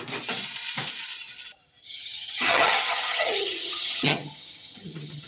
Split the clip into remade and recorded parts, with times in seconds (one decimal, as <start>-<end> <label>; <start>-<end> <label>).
0.0-1.8 recorded; 1.8-5.3 remade